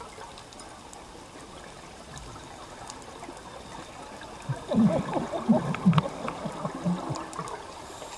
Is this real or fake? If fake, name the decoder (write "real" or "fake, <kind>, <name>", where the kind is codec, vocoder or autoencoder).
real